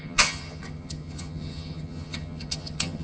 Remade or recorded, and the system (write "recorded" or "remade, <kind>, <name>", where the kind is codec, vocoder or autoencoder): remade, vocoder, HiFi-GAN